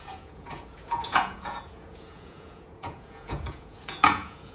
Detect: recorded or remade remade